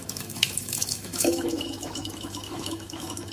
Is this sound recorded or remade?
remade